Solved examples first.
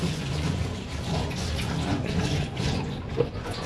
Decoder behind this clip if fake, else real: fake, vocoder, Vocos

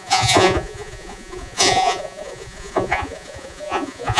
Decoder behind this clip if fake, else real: fake, vocoder, Vocos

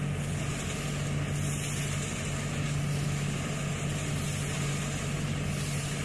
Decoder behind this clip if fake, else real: real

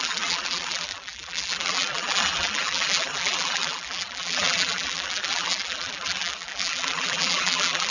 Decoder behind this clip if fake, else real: fake, vocoder, BigVGAN v2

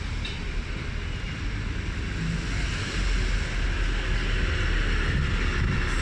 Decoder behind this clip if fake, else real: real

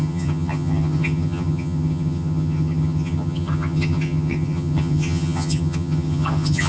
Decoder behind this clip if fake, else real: fake, vocoder, HiFi-GAN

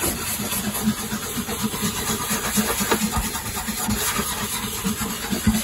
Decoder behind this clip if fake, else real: real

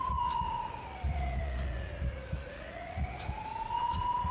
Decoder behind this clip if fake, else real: fake, vocoder, Vocos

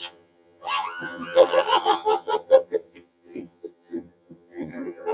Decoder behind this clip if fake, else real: fake, vocoder, HiFi-GAN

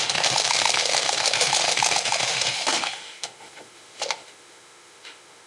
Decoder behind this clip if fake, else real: fake, autoencoder, DAC-VAE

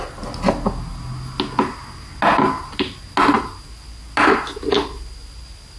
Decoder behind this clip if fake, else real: real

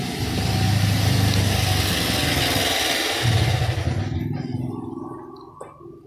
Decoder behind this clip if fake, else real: real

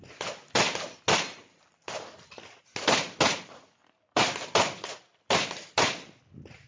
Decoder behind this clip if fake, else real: real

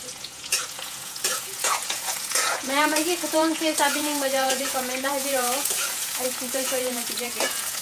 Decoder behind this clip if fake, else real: fake, vocoder, Vocos